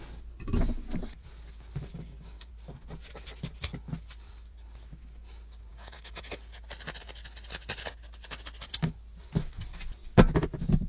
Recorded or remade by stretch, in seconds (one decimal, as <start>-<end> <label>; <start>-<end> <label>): 0.0-1.9 recorded; 1.9-2.5 remade; 2.5-5.7 recorded; 5.7-6.2 remade; 6.2-10.9 recorded